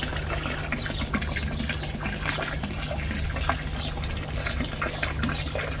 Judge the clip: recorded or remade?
recorded